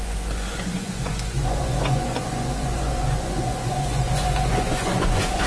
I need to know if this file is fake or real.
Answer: fake